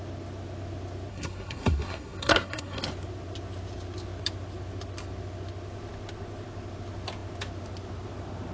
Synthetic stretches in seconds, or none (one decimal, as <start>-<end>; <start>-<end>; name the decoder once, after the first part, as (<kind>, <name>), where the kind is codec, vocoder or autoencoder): 1.1-2.8 (codec, SNAC)